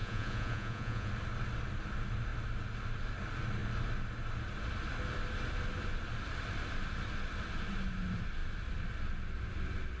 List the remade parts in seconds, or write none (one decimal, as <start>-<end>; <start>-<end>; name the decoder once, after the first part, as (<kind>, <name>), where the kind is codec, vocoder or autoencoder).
0.0-1.1 (vocoder, Vocos)